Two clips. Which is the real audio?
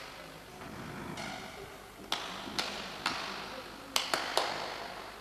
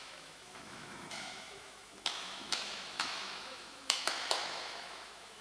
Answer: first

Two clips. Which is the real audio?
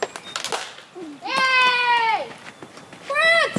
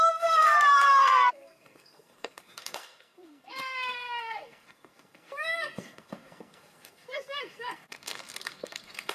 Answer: first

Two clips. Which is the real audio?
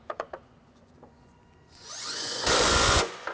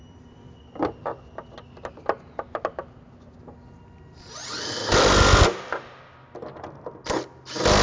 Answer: second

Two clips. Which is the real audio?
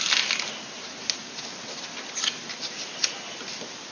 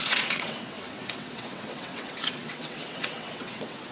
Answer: first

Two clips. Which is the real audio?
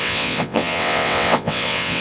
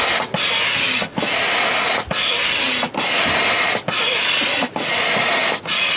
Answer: second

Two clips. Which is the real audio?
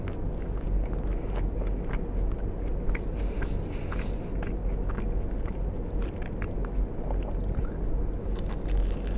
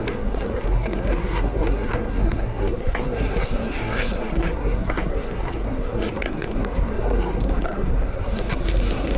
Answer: first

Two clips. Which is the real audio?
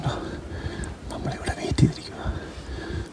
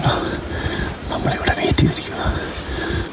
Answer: first